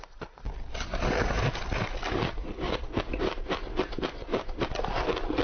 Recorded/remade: recorded